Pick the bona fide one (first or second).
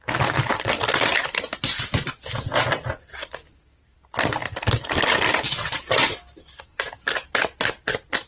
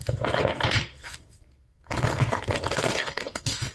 first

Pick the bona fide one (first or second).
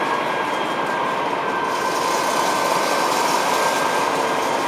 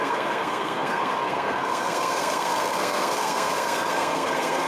first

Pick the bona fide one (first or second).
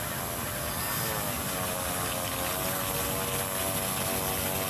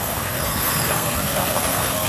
first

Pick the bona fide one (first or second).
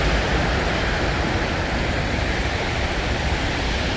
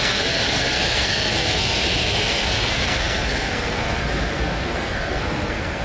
first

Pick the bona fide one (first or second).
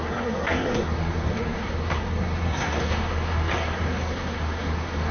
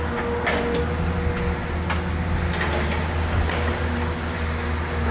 second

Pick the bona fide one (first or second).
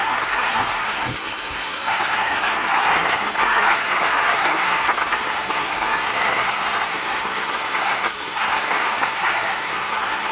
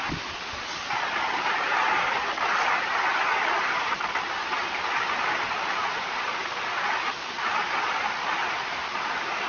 second